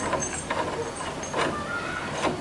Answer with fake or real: real